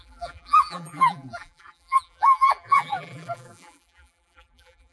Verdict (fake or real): fake